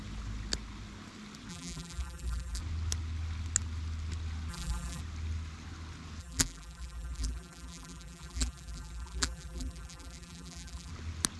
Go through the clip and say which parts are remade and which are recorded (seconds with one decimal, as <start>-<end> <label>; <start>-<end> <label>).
0.0-1.5 recorded; 1.5-2.6 remade; 2.6-4.5 recorded; 4.5-5.0 remade; 5.0-6.2 recorded; 6.2-10.9 remade; 10.9-11.4 recorded